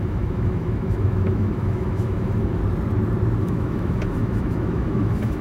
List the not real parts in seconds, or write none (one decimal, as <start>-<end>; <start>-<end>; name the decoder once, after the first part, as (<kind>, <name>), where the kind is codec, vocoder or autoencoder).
0.0-2.6 (autoencoder, DAC-VAE); 3.4-5.4